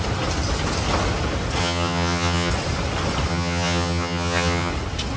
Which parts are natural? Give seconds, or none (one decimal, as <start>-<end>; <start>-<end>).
0.0-1.6; 2.5-3.3; 4.7-5.2